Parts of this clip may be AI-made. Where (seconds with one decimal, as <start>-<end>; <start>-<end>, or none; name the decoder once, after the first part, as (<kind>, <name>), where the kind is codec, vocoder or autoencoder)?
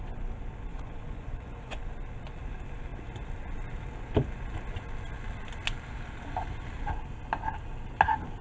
0.7-1.8 (vocoder, Vocos)